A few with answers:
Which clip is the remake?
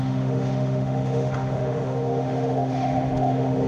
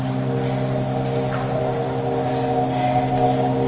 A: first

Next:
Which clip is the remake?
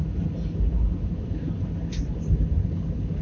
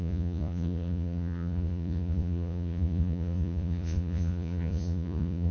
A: second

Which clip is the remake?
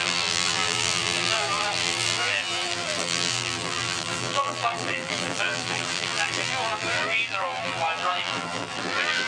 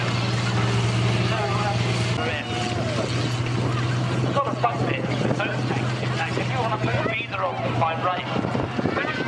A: first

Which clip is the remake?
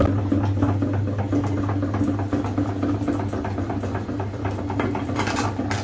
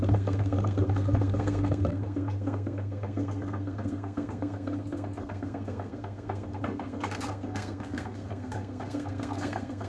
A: second